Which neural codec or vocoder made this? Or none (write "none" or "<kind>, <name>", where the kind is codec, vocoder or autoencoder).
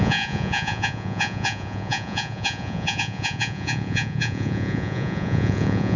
vocoder, Vocos